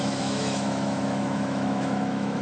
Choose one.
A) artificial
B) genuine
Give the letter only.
A